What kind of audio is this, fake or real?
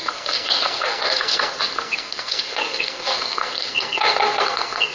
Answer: fake